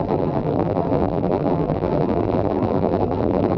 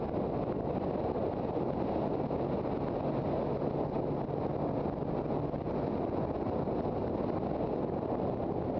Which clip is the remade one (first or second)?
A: first